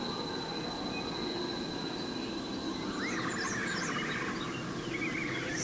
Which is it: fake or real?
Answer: real